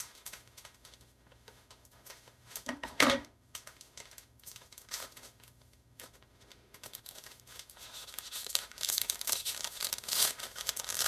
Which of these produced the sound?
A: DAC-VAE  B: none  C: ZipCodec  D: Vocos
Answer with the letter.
A